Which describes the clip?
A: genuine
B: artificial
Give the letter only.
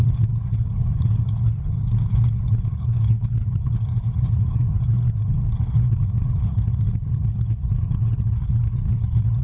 B